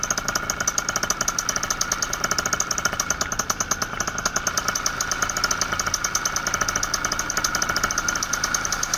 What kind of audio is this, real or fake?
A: real